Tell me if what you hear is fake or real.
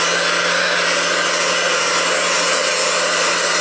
real